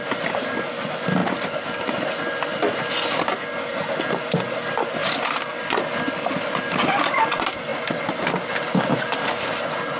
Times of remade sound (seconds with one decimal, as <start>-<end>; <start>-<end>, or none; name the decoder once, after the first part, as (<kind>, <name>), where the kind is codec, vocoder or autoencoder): none